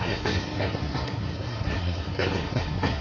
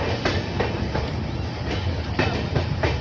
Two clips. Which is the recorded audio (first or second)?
second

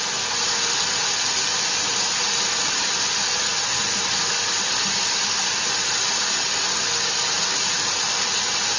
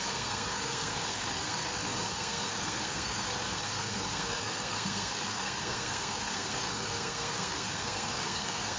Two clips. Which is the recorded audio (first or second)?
first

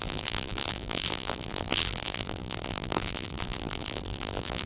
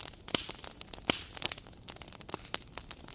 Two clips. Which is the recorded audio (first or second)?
second